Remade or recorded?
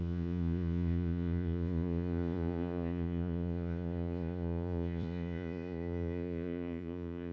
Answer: remade